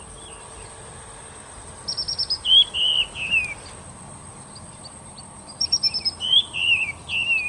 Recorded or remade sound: recorded